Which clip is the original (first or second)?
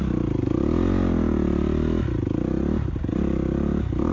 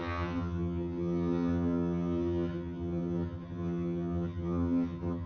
first